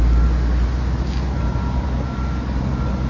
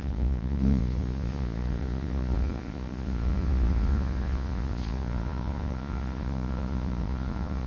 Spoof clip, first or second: second